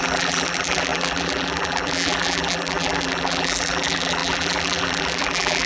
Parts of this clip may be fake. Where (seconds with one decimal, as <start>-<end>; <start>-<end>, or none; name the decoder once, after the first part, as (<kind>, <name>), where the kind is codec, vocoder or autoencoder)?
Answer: 0.0-5.7 (vocoder, BigVGAN v2)